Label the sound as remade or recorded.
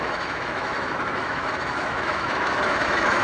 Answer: remade